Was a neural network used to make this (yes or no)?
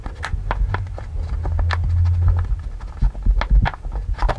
no